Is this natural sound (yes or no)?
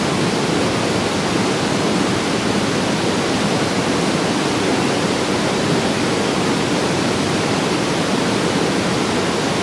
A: yes